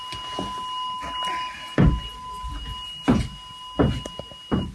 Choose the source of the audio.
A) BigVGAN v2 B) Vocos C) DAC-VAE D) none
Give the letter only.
D